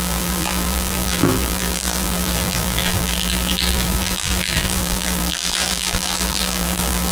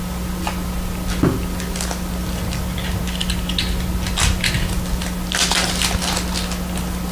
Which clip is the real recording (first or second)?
second